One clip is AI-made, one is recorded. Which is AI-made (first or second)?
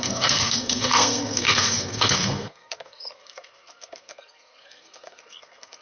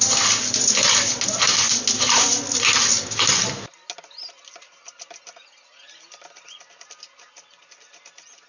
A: first